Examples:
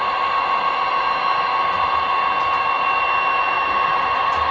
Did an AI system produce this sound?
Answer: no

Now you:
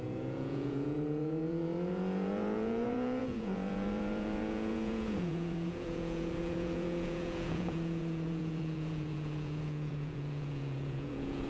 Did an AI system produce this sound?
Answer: yes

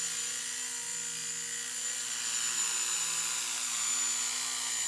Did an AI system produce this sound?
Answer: no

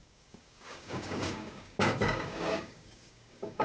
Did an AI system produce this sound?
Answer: yes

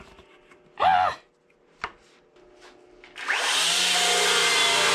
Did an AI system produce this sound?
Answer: no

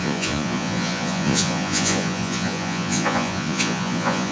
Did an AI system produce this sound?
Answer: yes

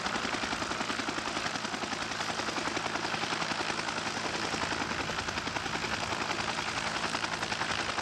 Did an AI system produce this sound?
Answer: no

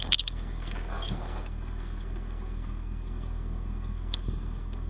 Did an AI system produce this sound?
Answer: yes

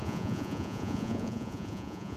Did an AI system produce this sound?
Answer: yes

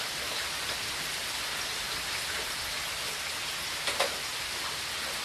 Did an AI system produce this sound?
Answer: no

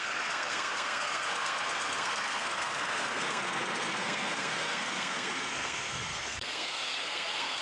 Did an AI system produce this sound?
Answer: yes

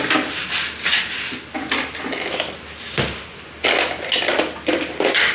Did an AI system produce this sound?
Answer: no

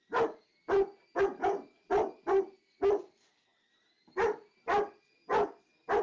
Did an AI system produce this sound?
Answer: no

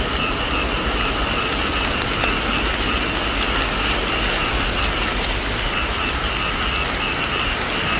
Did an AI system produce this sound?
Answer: no